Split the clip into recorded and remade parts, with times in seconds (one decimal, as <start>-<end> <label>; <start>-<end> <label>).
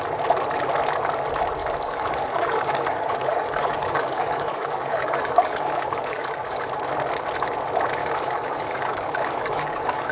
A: 0.0-1.6 recorded; 1.6-6.7 remade; 6.7-8.0 recorded; 8.0-10.1 remade